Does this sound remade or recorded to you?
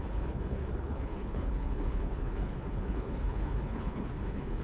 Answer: remade